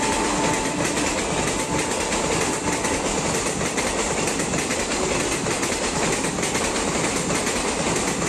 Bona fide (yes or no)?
yes